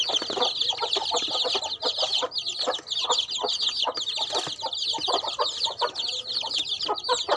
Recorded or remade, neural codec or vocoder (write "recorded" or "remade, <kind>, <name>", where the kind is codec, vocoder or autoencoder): recorded